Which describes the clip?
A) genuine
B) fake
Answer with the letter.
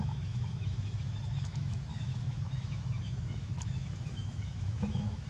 B